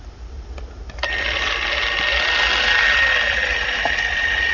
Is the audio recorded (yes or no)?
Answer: no